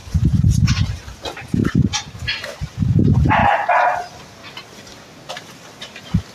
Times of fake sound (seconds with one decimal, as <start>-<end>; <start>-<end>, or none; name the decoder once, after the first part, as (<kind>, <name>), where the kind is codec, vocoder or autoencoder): 0.0-3.4 (vocoder, BigVGAN v2); 4.0-4.4